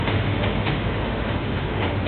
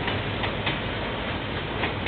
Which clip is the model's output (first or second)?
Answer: first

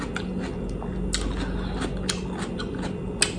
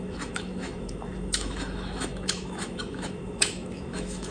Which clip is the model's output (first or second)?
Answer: second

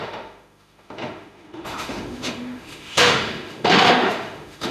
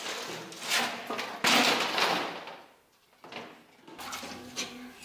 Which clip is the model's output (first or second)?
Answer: first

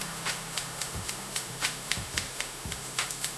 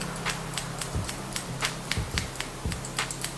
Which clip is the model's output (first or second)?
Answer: first